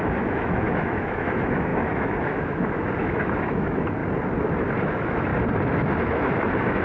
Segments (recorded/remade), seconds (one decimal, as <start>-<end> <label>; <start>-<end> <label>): 0.0-4.0 remade; 4.0-4.8 recorded; 4.8-5.3 remade; 5.3-6.1 recorded; 6.1-6.8 remade